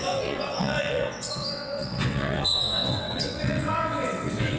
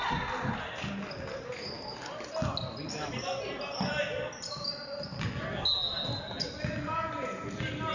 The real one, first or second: second